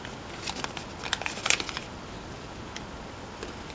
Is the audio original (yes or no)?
yes